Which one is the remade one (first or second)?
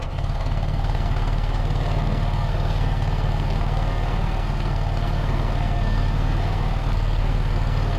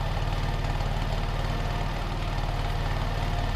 first